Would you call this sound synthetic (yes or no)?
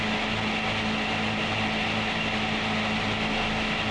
no